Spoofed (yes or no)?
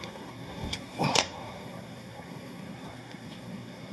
yes